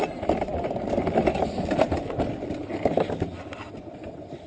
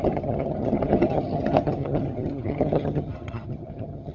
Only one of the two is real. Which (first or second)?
first